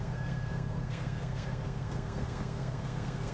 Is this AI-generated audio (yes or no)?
yes